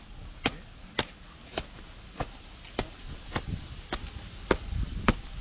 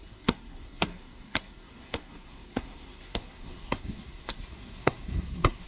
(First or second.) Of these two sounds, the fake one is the second